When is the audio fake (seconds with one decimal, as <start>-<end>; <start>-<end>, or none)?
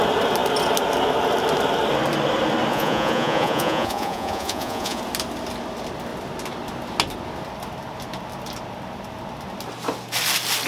2.7-5.0